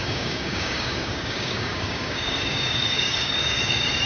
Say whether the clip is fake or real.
fake